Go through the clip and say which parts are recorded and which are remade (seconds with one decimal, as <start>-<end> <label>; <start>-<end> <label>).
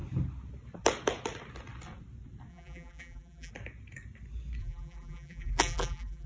0.0-2.5 recorded; 2.5-3.5 remade; 3.5-4.6 recorded; 4.6-6.3 remade